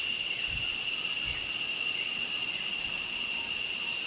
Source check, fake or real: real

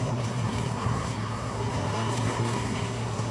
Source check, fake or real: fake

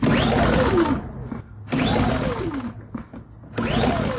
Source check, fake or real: real